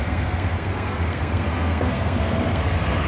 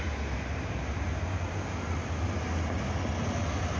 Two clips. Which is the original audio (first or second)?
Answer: second